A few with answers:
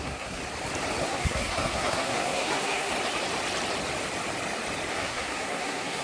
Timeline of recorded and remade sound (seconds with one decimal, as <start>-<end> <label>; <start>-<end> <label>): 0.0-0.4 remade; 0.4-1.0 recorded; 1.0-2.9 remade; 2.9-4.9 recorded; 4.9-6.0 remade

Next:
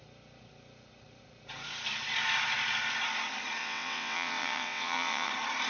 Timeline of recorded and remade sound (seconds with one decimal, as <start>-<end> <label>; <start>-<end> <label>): 0.0-3.6 recorded; 3.6-5.3 remade; 5.3-5.7 recorded

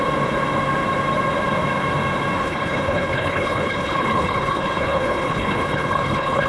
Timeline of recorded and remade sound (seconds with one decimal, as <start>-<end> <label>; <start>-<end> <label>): 0.0-2.4 recorded; 2.4-6.5 remade

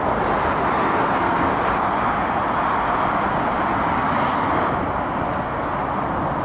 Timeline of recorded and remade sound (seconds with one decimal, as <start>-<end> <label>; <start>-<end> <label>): 0.0-0.9 recorded; 0.9-1.5 remade; 1.5-6.4 recorded

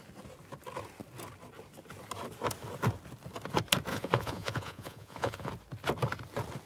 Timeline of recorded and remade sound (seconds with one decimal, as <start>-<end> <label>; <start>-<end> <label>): 0.0-3.9 recorded; 3.9-5.5 remade; 5.5-6.7 recorded